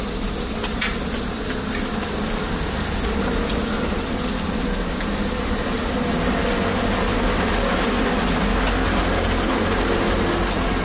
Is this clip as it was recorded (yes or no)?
yes